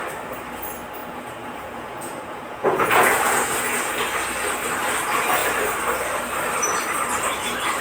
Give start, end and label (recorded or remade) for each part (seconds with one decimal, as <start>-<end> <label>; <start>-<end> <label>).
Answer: 0.0-1.0 recorded; 1.0-3.9 remade; 3.9-7.8 recorded